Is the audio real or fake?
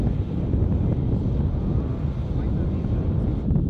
real